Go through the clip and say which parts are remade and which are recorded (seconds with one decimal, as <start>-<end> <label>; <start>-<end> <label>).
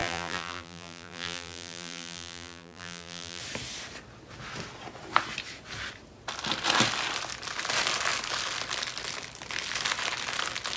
0.0-3.4 remade; 3.4-10.8 recorded